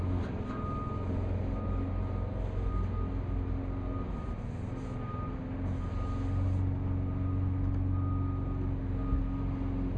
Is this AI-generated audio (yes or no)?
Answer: no